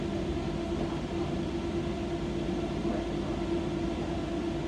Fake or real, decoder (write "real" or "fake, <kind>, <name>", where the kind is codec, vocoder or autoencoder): real